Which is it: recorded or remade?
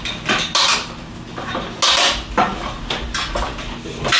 recorded